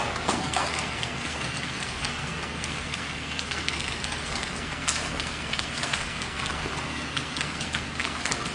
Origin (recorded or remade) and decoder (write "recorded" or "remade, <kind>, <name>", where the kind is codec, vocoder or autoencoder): remade, codec, SNAC